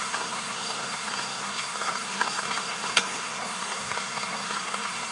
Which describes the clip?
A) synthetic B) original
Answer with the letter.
A